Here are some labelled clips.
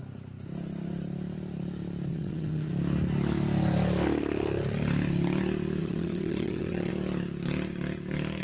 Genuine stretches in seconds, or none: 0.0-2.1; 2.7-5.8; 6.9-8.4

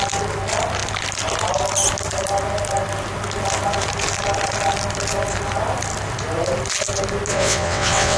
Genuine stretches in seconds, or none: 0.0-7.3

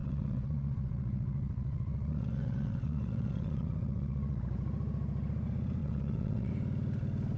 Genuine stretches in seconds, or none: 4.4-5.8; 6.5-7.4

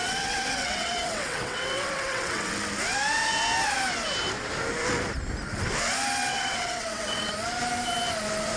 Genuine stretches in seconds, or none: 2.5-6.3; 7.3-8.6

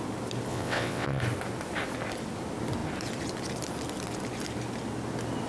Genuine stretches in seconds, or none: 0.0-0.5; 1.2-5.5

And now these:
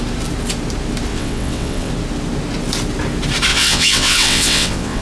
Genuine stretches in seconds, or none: 0.0-1.1; 1.9-3.5